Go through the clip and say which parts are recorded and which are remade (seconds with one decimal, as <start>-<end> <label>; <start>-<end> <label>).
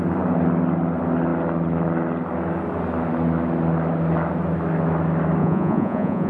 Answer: 0.0-5.4 recorded; 5.4-6.3 remade